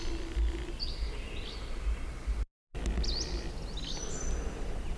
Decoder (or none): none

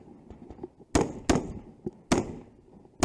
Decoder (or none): none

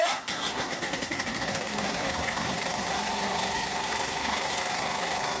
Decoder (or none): codec, SNAC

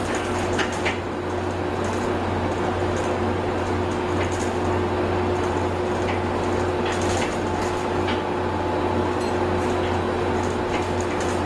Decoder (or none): none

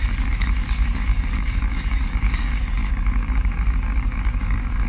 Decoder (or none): codec, DAC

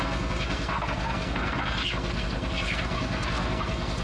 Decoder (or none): codec, SNAC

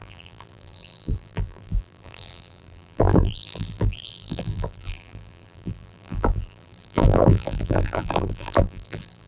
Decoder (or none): vocoder, BigVGAN v2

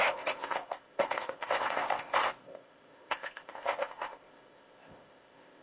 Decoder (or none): codec, ZipCodec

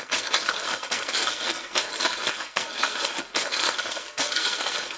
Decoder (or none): codec, SNAC